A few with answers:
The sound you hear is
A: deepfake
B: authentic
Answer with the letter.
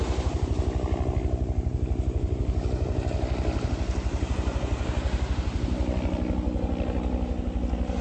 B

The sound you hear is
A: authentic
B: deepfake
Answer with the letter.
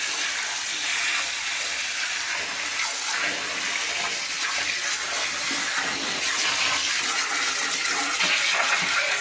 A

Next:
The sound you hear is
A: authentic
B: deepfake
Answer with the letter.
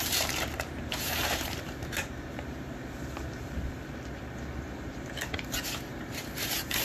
B